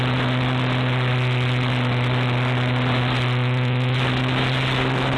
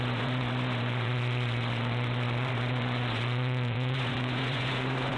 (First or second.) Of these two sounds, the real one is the first